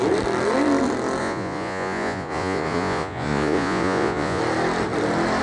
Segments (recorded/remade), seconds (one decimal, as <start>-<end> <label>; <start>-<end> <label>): 0.0-1.2 recorded; 1.2-4.4 remade; 4.4-5.4 recorded